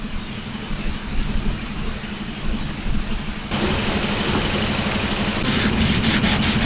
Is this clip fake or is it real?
real